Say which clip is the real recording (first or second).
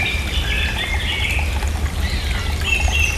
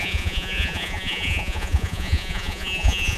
first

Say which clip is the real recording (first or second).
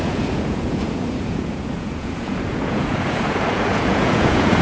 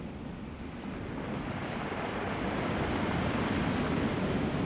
second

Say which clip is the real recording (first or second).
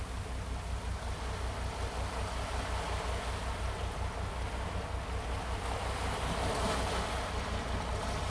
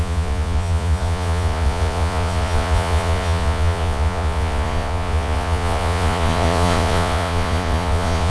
first